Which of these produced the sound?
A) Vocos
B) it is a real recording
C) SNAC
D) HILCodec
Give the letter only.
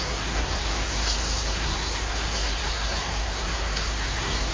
C